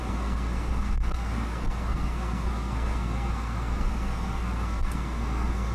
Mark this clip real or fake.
fake